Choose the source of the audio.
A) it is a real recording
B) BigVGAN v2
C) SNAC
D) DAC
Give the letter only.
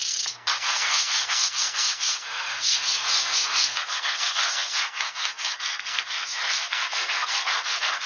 C